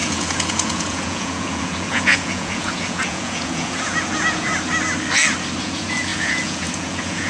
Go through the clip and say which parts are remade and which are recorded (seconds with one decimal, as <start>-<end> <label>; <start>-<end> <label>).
0.0-4.5 remade; 4.5-5.6 recorded; 5.6-7.3 remade